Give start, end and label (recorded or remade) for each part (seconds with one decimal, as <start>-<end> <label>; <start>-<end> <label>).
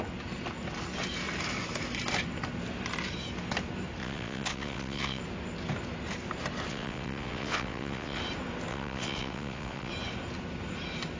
0.0-4.0 recorded; 4.0-5.2 remade; 5.2-6.7 recorded; 6.7-8.2 remade; 8.2-8.7 recorded; 8.7-9.9 remade; 9.9-11.2 recorded